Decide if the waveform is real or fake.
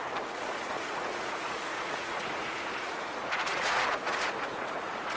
fake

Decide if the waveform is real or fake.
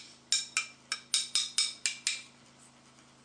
real